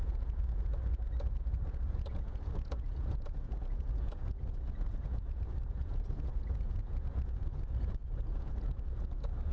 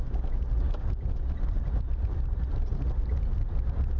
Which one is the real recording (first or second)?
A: second